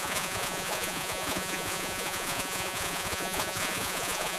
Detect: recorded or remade remade